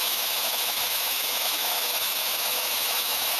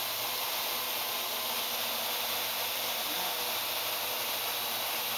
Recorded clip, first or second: second